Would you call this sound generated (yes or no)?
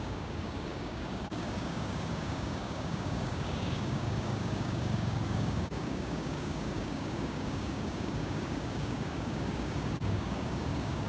yes